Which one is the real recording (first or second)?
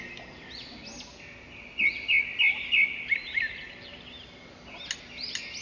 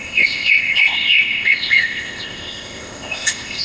first